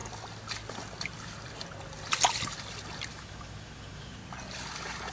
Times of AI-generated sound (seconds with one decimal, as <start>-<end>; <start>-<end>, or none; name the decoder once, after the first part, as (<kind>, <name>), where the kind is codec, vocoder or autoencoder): 3.1-4.2 (autoencoder, DAC-VAE)